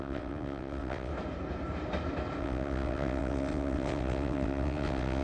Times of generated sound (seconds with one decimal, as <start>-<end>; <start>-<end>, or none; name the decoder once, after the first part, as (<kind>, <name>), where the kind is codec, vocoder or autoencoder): 0.0-1.1 (vocoder, WaveNeXt); 2.4-5.2